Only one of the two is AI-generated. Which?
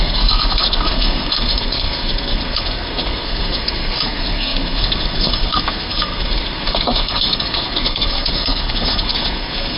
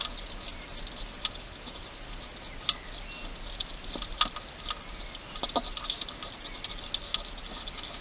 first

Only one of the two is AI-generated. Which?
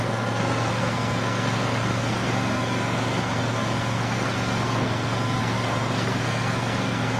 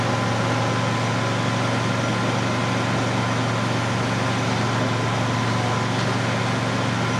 first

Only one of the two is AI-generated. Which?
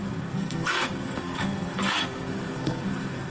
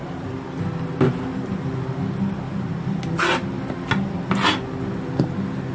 first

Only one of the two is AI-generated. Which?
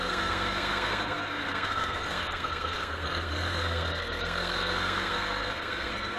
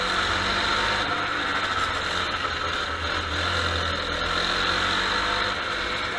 first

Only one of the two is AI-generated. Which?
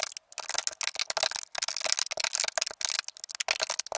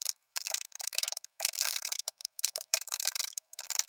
second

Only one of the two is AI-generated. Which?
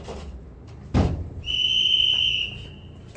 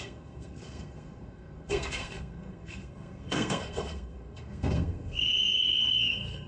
second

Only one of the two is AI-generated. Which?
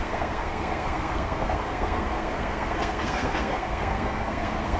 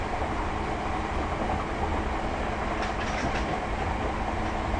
first